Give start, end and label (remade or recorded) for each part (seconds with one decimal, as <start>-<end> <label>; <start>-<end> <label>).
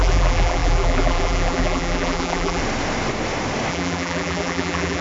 0.0-2.6 remade; 2.6-3.7 recorded; 3.7-5.0 remade